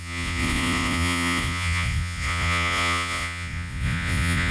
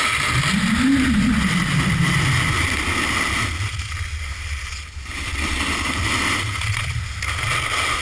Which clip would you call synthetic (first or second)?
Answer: first